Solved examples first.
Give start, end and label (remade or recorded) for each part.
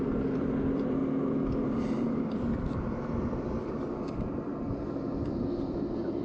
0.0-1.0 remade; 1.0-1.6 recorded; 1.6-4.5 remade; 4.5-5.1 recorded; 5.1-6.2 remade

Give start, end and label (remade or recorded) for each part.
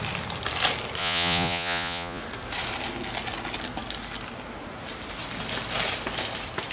0.0-1.0 recorded; 1.0-2.2 remade; 2.2-6.7 recorded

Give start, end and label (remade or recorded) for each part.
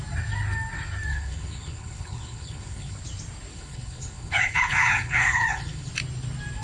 0.0-1.1 recorded; 1.1-3.0 remade; 3.0-3.5 recorded; 3.5-5.9 remade; 5.9-6.6 recorded